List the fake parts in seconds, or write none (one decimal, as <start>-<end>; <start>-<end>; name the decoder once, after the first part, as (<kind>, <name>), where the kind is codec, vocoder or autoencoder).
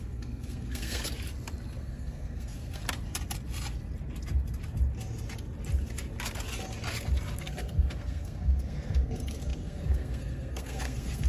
0.0-1.0 (codec, SNAC); 1.8-2.8; 7.4-11.3